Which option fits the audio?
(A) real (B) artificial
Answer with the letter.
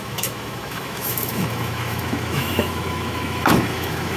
B